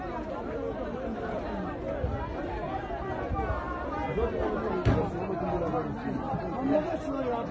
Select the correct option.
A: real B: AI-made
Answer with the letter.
A